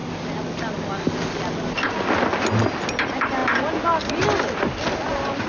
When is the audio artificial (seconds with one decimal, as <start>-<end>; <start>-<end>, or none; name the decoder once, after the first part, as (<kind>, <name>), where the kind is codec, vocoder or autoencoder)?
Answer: none

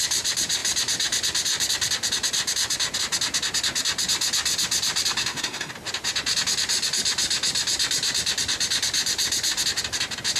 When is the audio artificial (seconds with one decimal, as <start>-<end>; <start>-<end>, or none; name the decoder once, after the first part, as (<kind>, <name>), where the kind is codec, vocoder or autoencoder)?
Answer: 5.2-5.7 (autoencoder, DAC-VAE)

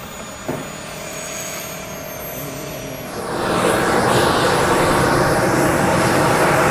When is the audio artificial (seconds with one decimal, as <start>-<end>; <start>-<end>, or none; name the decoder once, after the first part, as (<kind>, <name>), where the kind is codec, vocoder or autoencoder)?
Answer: 1.1-1.6 (autoencoder, DAC-VAE)

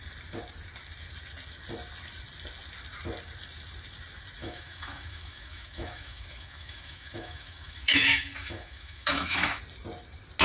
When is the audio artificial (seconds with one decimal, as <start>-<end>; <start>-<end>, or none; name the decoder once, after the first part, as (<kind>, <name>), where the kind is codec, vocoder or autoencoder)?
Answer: 4.4-9.6 (autoencoder, DAC-VAE)